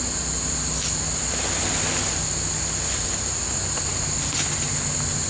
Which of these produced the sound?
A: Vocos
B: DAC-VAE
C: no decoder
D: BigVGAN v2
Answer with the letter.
C